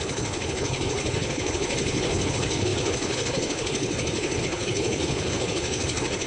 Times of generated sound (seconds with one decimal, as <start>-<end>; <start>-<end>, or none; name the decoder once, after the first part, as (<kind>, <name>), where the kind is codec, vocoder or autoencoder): 0.0-6.3 (codec, HILCodec)